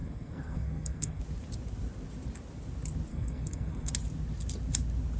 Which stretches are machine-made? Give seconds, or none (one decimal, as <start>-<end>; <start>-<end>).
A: 0.0-1.2; 3.1-3.9